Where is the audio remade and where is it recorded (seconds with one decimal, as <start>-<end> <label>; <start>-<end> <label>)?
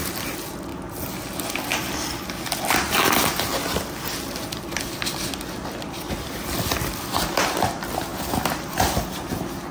0.0-9.7 recorded